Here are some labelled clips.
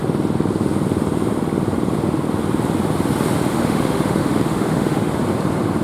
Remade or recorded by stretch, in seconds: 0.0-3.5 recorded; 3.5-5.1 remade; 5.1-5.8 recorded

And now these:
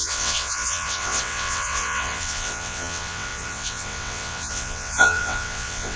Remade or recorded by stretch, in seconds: 0.0-6.0 remade

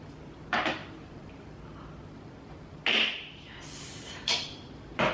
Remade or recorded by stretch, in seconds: 0.0-0.8 remade; 0.8-3.9 recorded; 3.9-5.1 remade

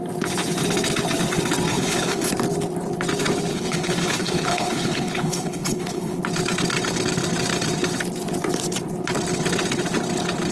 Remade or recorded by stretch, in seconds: 0.0-1.7 recorded; 1.7-2.3 remade; 2.3-3.5 recorded; 3.5-6.2 remade; 6.2-10.5 recorded

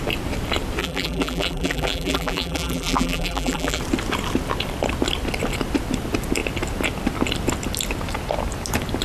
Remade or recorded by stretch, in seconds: 0.0-0.8 recorded; 0.8-3.8 remade; 3.8-9.0 recorded

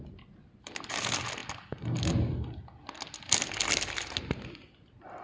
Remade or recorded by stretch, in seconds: 0.0-5.2 recorded

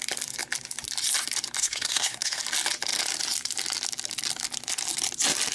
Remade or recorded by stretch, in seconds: 0.0-1.6 recorded; 1.6-2.4 remade; 2.4-5.5 recorded